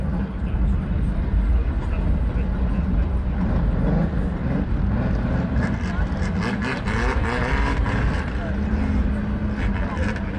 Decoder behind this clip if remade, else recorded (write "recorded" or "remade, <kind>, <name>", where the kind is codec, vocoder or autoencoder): recorded